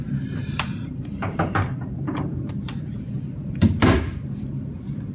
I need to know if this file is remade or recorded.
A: remade